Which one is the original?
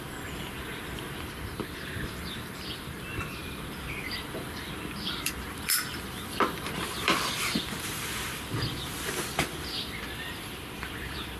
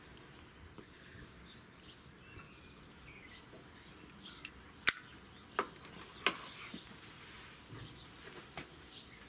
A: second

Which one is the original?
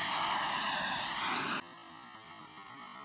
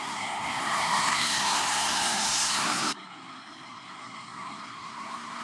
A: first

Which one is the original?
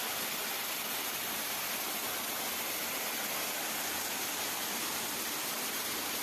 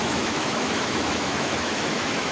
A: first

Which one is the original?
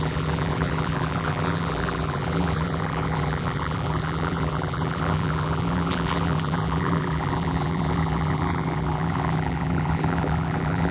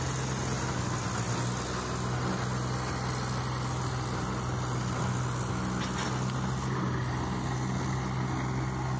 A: second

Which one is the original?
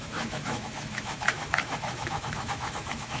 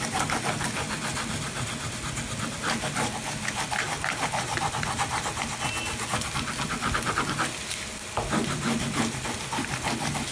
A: second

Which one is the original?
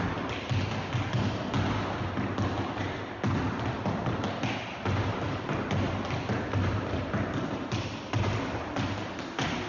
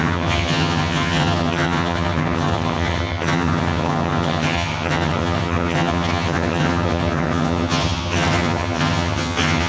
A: first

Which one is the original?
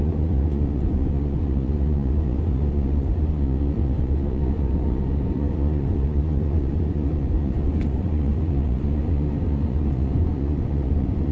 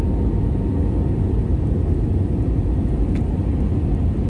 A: second